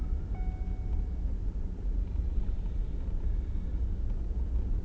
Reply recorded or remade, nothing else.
recorded